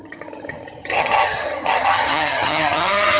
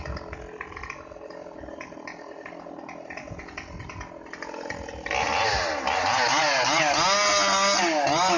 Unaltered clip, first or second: second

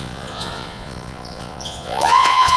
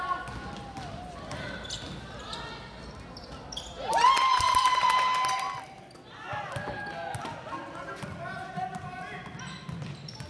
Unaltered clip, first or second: second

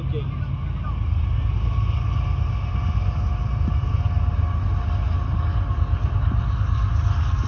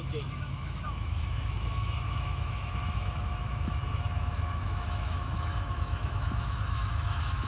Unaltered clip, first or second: first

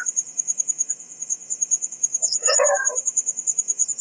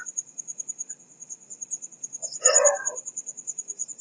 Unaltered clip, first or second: second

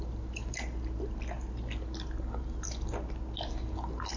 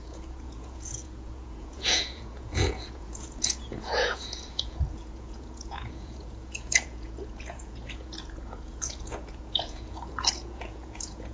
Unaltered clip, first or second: first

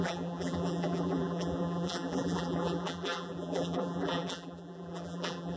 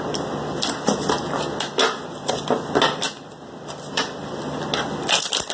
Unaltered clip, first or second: second